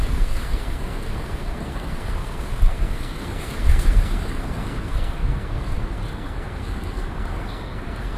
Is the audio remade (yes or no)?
yes